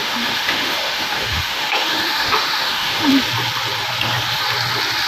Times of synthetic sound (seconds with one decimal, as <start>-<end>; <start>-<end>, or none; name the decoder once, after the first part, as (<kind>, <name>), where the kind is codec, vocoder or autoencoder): 0.0-3.1 (autoencoder, DAC-VAE)